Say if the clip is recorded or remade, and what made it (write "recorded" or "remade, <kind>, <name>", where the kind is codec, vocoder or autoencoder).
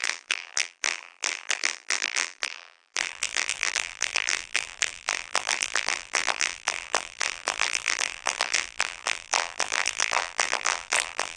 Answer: remade, vocoder, BigVGAN v2